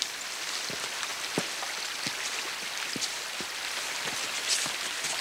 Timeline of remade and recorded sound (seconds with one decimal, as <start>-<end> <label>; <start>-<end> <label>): 0.0-5.2 recorded